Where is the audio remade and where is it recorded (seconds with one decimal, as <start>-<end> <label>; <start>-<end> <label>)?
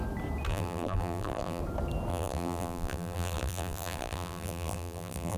0.0-0.5 recorded; 0.5-1.6 remade; 1.6-2.1 recorded; 2.1-5.4 remade